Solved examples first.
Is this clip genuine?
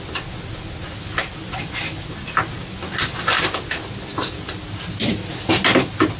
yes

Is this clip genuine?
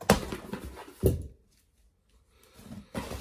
yes